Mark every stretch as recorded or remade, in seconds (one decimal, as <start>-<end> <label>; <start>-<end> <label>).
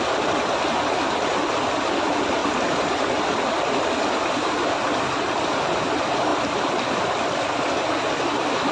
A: 0.0-2.4 recorded; 2.4-4.7 remade; 4.7-6.3 recorded; 6.3-6.9 remade; 6.9-8.7 recorded